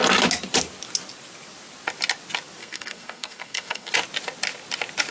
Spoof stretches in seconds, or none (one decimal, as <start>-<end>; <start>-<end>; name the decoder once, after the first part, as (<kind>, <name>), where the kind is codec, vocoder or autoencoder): 2.6-3.9 (codec, SNAC)

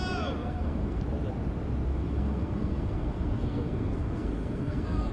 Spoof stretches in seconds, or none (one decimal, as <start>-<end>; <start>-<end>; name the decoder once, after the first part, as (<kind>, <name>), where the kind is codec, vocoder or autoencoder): 0.4-1.0 (codec, SNAC); 1.9-5.1

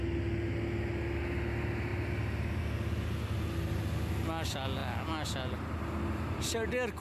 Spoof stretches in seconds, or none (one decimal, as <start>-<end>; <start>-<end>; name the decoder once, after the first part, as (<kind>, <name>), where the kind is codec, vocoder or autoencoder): none

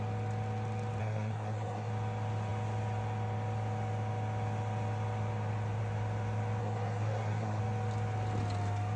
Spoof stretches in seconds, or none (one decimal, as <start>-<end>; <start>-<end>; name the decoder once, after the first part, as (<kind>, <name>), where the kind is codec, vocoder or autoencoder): 1.0-1.9 (codec, SNAC); 6.6-7.6